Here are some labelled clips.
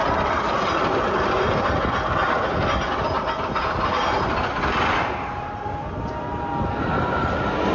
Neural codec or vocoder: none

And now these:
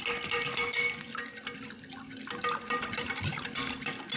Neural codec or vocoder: none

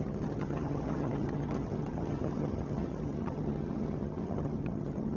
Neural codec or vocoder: vocoder, HiFi-GAN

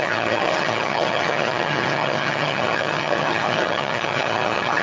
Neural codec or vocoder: vocoder, HiFi-GAN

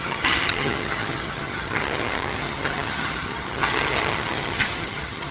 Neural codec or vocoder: vocoder, HiFi-GAN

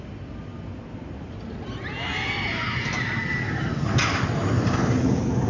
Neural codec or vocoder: none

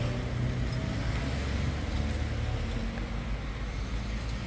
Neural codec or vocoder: none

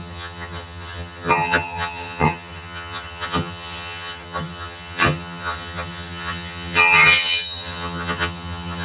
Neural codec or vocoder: vocoder, HiFi-GAN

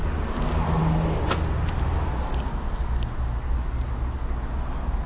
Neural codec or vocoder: none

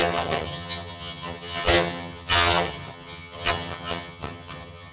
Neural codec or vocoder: vocoder, HiFi-GAN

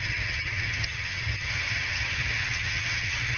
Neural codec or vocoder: vocoder, HiFi-GAN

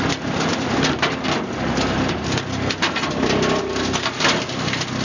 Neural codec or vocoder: none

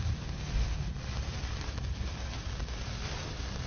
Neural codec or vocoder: none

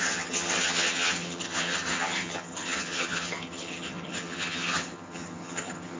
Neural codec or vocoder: vocoder, HiFi-GAN